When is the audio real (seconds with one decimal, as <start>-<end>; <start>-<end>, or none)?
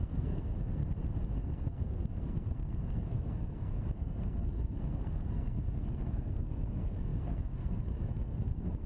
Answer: 0.8-1.4